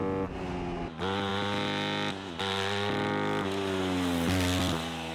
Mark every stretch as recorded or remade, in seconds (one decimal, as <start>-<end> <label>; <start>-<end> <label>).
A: 0.0-5.1 recorded